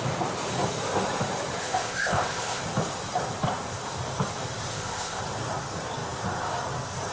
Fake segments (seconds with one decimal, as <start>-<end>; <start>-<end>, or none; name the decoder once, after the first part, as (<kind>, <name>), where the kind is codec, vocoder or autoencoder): 1.6-2.6 (codec, ZipCodec); 4.7-5.2